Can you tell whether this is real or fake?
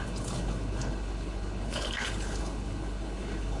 fake